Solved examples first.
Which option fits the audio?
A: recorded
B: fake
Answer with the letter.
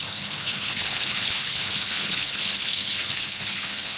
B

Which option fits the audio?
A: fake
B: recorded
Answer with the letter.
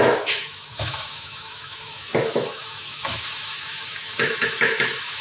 A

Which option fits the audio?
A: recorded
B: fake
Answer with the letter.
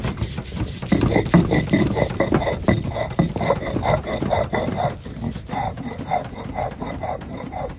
A